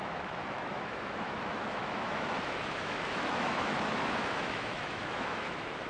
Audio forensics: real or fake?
fake